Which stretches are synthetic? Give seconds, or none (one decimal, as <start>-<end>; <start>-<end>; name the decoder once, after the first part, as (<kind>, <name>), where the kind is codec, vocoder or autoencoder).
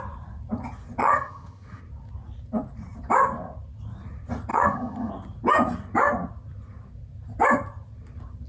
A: 1.0-1.8 (vocoder, HiFi-GAN); 4.5-5.1